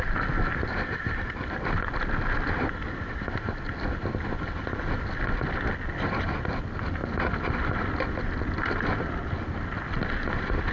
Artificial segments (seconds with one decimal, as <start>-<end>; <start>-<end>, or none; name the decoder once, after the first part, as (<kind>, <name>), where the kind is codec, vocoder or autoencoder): none